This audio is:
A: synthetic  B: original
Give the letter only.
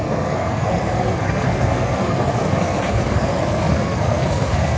A